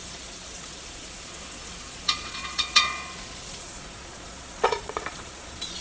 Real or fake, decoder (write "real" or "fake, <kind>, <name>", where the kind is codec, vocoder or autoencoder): fake, vocoder, Vocos